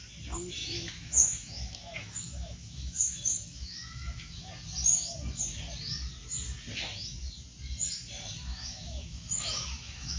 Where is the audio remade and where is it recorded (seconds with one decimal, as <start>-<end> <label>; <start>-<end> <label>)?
0.0-0.6 recorded; 0.6-4.5 remade; 4.5-8.5 recorded; 8.5-10.2 remade